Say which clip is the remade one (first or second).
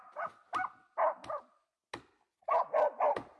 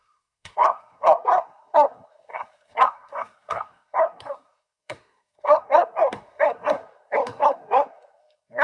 second